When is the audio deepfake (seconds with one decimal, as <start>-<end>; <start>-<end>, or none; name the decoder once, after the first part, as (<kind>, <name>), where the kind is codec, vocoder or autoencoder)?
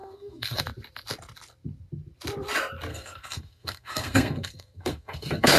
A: 0.0-0.6 (codec, SNAC); 2.9-5.6